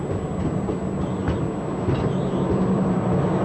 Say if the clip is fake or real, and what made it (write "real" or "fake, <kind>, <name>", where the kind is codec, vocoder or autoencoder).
real